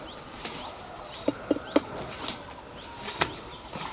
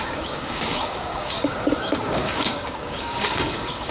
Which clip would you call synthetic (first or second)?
second